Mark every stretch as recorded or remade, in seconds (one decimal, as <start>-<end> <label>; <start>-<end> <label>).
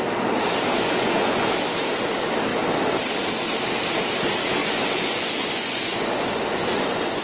0.0-0.7 recorded; 0.7-1.5 remade; 1.5-4.6 recorded; 4.6-7.2 remade